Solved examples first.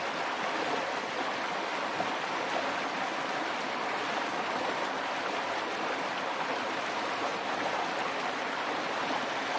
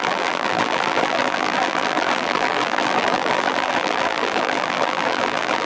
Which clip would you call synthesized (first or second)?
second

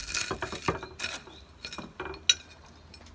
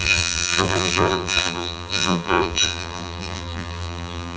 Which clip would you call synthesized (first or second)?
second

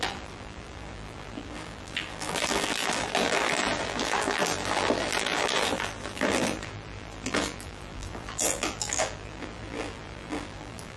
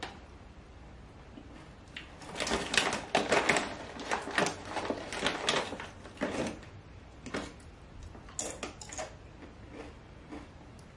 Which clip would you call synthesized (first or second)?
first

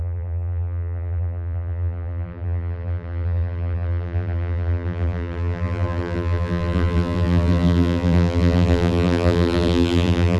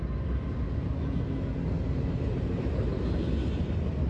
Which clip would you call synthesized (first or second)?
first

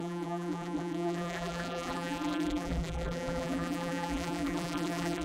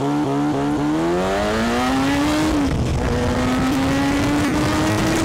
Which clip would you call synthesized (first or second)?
first